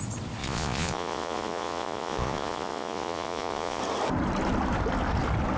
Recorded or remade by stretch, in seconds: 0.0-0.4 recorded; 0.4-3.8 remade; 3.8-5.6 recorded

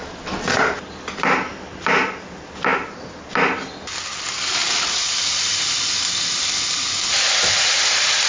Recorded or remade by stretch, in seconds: 0.0-8.3 recorded

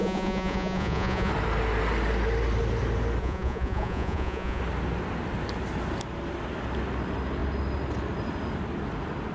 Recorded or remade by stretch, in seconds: 0.0-1.3 remade; 1.3-3.2 recorded; 3.2-4.6 remade; 4.6-9.3 recorded